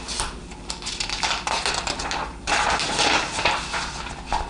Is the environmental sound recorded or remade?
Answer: recorded